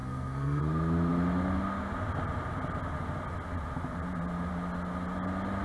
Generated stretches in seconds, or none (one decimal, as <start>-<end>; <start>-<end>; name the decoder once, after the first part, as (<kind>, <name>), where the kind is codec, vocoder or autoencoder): 0.0-0.6 (codec, SNAC)